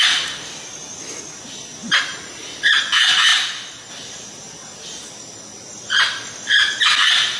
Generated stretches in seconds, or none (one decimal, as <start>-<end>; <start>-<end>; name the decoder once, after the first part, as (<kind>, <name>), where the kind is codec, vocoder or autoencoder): 1.8-2.8 (vocoder, BigVGAN v2)